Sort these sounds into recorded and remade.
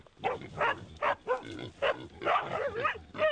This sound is recorded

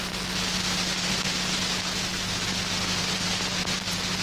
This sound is recorded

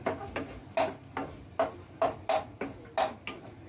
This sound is recorded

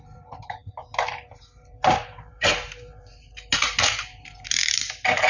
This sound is remade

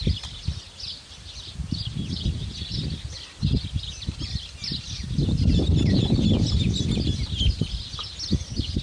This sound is recorded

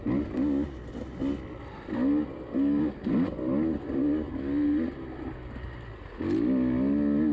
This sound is recorded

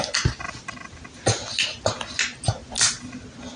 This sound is recorded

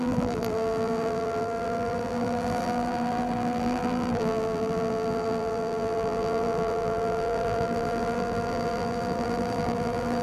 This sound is remade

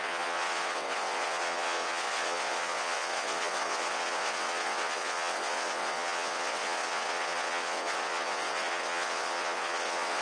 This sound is remade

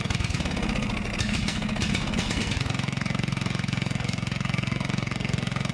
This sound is remade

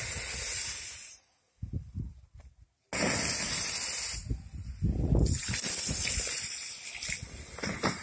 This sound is recorded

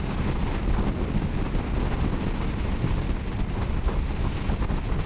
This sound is recorded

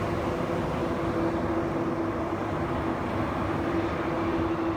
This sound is recorded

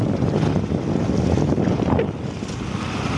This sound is recorded